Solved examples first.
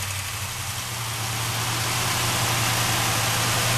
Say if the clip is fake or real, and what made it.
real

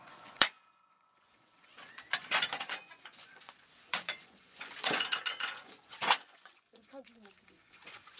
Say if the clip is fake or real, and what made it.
fake, vocoder, Vocos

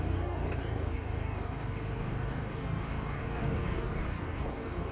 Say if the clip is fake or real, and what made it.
fake, codec, DAC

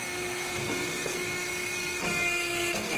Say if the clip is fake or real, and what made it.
fake, codec, SNAC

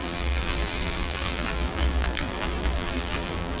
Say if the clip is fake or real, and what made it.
fake, vocoder, BigVGAN v2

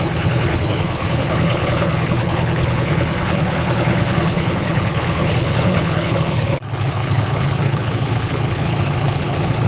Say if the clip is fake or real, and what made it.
fake, codec, HILCodec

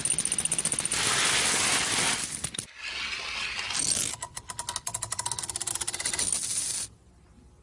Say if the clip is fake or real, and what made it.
real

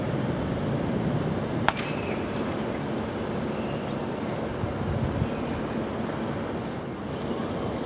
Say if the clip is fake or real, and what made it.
real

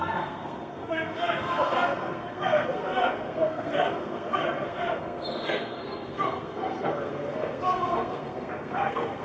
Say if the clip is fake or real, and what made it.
fake, codec, SNAC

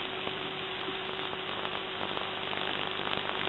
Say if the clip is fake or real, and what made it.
real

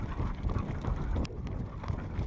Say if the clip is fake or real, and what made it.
real